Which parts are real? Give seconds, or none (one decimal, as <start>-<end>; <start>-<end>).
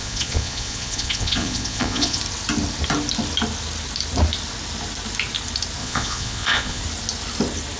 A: 2.2-5.8; 6.8-7.8